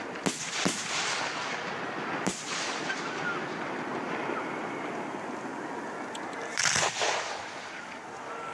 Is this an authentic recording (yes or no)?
yes